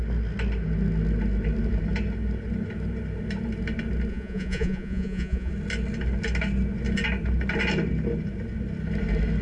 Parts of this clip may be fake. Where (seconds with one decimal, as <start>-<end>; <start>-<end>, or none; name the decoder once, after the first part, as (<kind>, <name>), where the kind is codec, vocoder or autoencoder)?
4.1-5.5 (vocoder, Vocos)